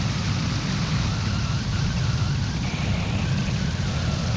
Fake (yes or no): no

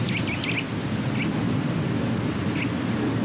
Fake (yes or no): no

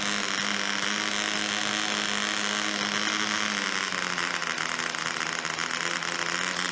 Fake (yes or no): no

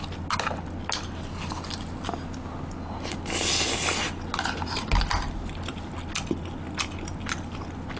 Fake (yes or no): no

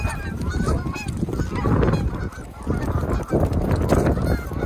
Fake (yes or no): no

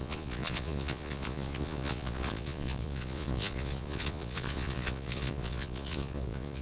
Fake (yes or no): yes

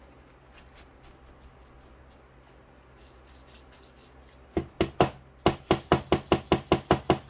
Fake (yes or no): no